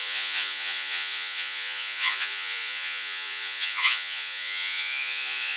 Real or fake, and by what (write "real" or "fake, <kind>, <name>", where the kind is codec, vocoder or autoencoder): fake, vocoder, Vocos